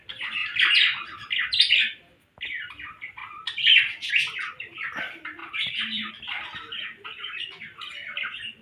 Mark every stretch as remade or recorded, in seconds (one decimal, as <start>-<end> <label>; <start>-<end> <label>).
0.0-5.4 recorded; 5.4-6.1 remade; 6.1-8.6 recorded